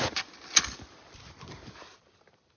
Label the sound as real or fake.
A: fake